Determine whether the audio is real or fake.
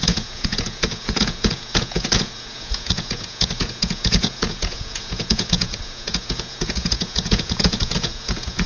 fake